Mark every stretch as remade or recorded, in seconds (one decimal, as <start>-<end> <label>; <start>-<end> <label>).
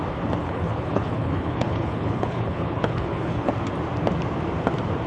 0.0-0.4 recorded; 0.4-3.5 remade; 3.5-5.1 recorded